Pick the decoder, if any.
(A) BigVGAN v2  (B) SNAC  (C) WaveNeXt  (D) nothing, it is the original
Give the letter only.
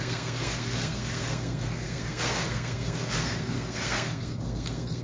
B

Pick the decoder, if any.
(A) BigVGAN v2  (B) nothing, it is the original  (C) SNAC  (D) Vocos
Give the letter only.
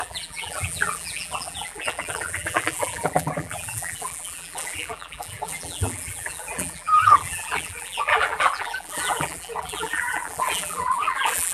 A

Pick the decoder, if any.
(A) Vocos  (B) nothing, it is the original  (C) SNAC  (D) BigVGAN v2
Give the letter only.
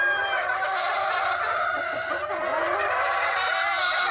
B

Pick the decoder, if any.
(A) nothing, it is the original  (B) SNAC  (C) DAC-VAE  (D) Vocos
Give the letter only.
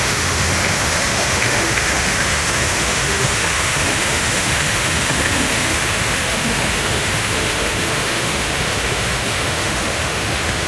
C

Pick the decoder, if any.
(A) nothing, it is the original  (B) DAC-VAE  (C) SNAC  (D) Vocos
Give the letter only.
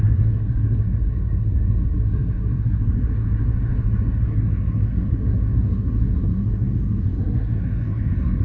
C